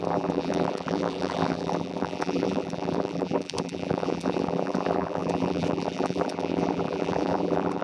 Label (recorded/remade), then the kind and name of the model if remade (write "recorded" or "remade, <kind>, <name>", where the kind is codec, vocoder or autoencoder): remade, vocoder, BigVGAN v2